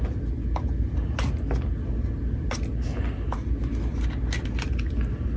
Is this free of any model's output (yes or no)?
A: yes